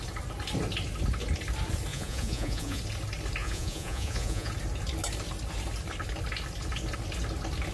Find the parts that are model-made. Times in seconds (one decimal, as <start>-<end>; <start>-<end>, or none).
1.9-2.8; 3.4-4.5